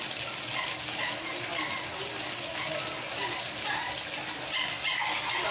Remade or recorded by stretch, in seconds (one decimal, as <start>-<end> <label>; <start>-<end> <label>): 0.0-5.5 recorded